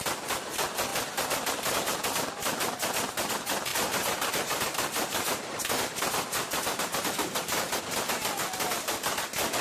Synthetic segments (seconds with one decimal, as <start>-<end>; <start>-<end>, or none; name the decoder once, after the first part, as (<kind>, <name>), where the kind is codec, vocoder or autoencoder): 3.7-7.8 (vocoder, BigVGAN v2)